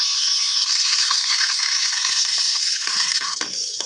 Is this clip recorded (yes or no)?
no